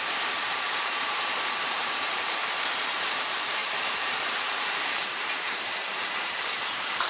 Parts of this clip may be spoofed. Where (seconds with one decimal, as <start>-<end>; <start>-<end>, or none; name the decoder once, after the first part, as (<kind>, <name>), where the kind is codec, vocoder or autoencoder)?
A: 0.0-7.1 (vocoder, BigVGAN v2)